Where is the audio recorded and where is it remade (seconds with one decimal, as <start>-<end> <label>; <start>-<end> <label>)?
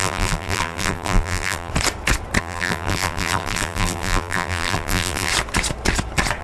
0.0-1.7 remade; 1.7-2.4 recorded; 2.4-5.3 remade; 5.3-6.4 recorded